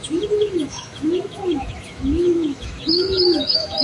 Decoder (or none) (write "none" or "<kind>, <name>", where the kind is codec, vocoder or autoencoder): autoencoder, DAC-VAE